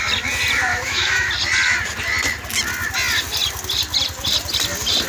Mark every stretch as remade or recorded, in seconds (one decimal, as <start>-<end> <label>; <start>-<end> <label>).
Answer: 0.0-0.7 recorded; 0.7-1.3 remade; 1.3-5.1 recorded